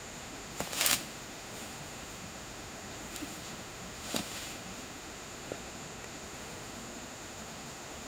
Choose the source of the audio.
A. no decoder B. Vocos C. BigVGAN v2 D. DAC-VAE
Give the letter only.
D